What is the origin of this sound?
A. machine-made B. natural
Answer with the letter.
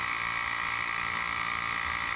B